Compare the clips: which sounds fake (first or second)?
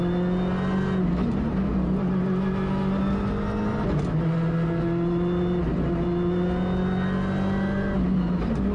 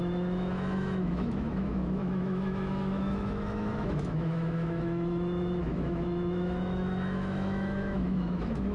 second